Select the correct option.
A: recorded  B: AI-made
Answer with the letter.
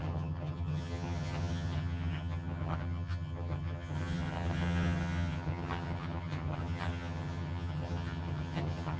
B